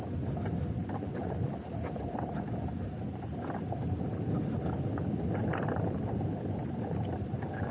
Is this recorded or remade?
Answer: recorded